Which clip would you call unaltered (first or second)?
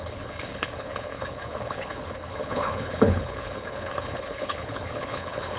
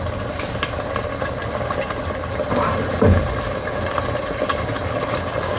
second